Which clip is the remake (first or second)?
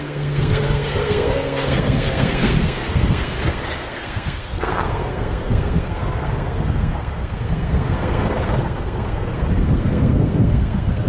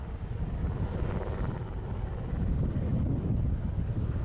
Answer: first